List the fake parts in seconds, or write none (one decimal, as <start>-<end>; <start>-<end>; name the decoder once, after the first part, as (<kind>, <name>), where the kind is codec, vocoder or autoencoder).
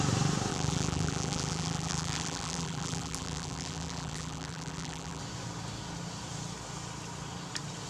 0.5-5.2 (vocoder, BigVGAN v2)